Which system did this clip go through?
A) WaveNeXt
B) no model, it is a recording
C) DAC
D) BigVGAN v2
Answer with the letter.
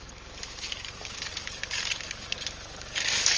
C